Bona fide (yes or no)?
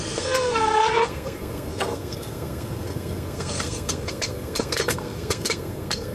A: no